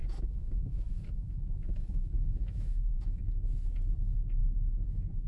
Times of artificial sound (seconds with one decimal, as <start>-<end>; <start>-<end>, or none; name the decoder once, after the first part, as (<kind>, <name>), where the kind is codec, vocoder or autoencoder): 0.0-3.2 (autoencoder, DAC-VAE); 4.4-5.3

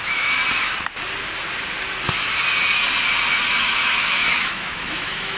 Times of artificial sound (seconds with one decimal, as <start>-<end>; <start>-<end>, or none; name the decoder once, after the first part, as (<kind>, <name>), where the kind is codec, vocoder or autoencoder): 0.0-0.4 (autoencoder, DAC-VAE); 3.6-5.4

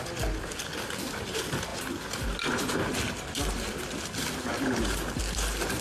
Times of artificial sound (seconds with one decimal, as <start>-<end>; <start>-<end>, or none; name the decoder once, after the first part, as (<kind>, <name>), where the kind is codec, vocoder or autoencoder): none

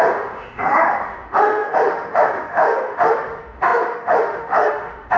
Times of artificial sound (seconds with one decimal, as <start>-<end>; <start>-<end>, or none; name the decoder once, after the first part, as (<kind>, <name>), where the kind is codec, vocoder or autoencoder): 0.0-5.2 (autoencoder, DAC-VAE)

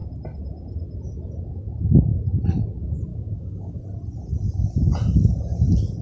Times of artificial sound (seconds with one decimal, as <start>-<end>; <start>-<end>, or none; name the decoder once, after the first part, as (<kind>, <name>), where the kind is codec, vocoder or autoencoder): 3.1-3.8 (autoencoder, DAC-VAE)

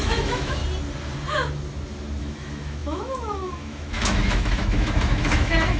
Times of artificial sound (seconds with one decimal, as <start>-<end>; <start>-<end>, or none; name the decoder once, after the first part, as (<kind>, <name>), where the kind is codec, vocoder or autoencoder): 0.0-0.6 (autoencoder, DAC-VAE); 2.2-5.8

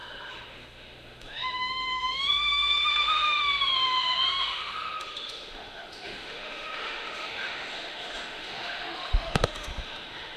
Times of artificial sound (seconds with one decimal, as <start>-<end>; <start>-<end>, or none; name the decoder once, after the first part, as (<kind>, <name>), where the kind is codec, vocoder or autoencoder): 0.0-10.4 (autoencoder, DAC-VAE)